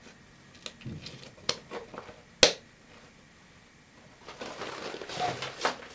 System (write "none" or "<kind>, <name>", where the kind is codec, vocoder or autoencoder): none